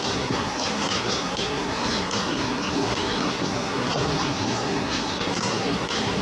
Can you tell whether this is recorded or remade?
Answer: remade